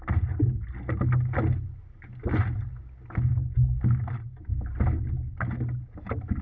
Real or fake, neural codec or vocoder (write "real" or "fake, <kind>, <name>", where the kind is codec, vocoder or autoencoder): real